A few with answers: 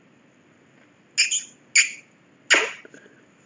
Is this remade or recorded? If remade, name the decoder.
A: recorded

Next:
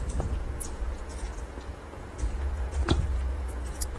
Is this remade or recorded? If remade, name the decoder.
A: remade, vocoder, Vocos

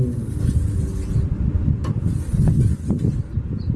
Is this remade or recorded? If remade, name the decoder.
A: recorded